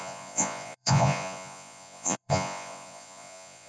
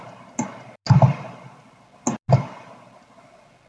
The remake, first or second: first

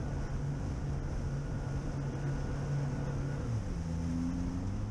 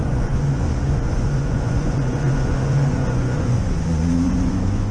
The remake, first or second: second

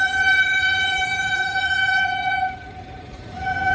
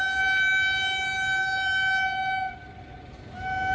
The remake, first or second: first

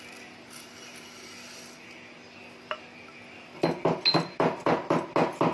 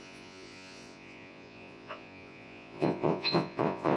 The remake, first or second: second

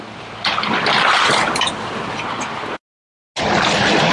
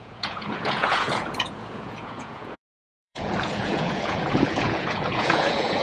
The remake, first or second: second